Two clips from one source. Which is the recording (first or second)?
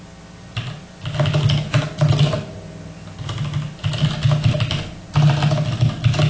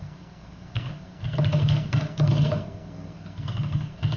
first